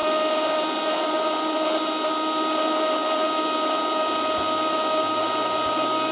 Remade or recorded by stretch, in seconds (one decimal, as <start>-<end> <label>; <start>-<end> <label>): 0.0-6.1 recorded